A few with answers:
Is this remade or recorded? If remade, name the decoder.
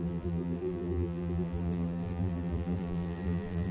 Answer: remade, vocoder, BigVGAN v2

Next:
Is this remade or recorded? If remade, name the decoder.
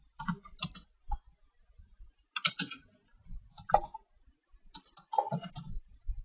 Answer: recorded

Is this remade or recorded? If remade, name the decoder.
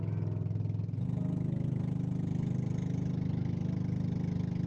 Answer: recorded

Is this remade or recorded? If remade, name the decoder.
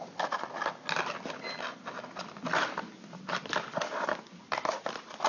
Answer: recorded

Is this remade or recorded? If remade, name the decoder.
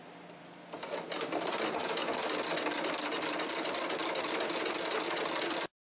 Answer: recorded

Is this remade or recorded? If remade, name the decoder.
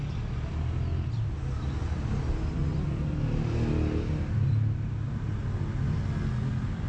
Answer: recorded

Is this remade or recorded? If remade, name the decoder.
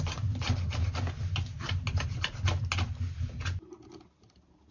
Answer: recorded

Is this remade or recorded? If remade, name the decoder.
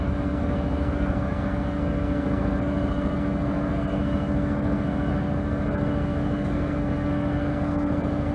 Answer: remade, codec, SNAC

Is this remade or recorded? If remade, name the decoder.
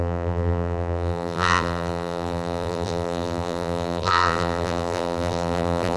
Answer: remade, vocoder, BigVGAN v2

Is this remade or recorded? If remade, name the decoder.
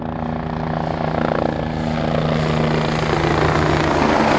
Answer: recorded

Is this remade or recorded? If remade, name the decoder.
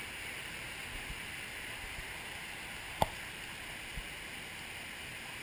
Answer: recorded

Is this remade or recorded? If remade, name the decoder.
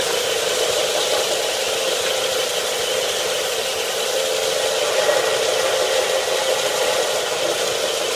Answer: recorded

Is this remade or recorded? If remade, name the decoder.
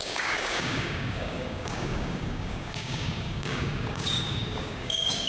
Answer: remade, codec, DAC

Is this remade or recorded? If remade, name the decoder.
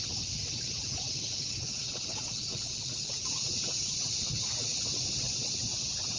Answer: remade, vocoder, WaveNeXt